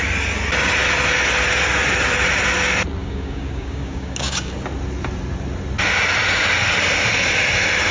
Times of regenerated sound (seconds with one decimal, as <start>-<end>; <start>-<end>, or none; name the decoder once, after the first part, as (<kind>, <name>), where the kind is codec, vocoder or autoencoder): 3.0-4.5 (codec, DAC)

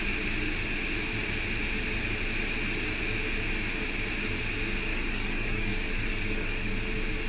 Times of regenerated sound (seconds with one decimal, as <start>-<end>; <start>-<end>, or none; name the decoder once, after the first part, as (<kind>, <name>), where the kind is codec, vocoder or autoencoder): 4.9-6.7 (codec, DAC)

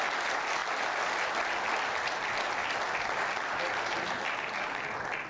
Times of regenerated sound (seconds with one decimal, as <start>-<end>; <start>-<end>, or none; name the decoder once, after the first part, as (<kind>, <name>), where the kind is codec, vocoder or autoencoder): none